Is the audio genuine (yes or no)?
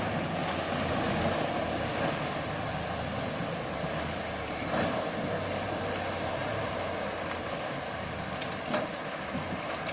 yes